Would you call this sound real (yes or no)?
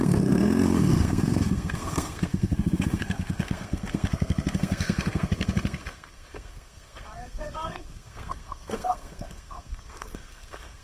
no